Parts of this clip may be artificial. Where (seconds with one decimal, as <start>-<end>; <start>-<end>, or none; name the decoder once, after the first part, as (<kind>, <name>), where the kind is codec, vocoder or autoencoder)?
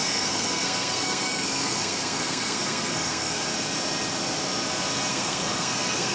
0.0-3.4 (codec, SNAC); 5.1-6.1